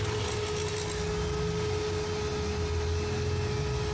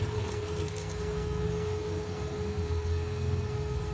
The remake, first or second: second